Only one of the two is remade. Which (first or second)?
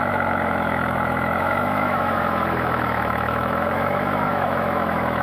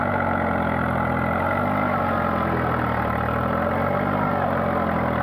first